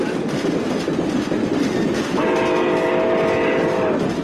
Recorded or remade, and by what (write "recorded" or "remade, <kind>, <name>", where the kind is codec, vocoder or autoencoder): recorded